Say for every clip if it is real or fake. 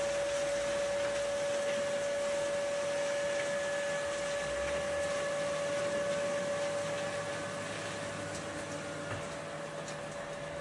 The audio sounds real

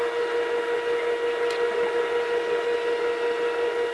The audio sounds real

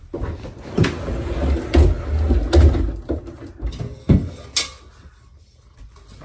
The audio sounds real